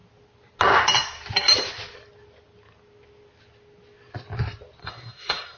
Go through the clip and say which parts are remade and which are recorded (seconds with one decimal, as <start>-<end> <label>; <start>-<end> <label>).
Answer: 0.0-4.8 recorded; 4.8-5.6 remade